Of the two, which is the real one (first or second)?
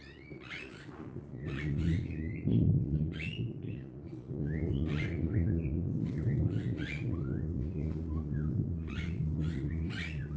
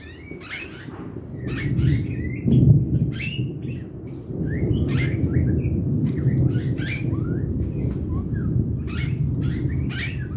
second